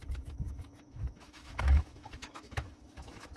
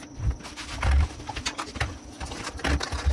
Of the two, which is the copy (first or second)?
first